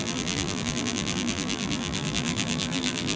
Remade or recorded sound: remade